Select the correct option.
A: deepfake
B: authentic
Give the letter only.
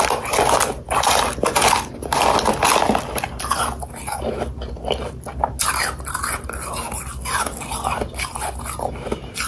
B